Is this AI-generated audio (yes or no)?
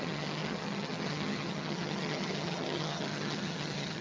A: yes